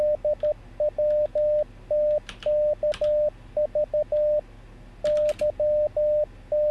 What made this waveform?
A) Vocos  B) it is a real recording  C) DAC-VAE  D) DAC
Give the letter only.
B